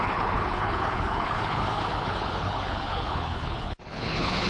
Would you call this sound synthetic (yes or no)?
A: yes